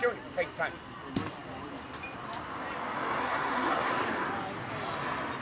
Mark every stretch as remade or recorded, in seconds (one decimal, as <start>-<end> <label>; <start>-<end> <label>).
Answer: 0.0-3.2 recorded; 3.2-3.9 remade; 3.9-5.4 recorded

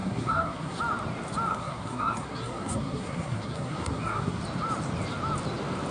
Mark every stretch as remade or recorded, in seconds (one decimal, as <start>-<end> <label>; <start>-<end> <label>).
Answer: 0.0-0.8 remade; 0.8-1.5 recorded; 1.5-4.4 remade; 4.4-5.9 recorded